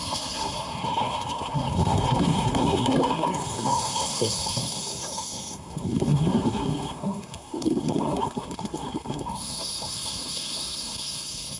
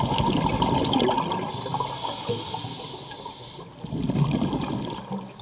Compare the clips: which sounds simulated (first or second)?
first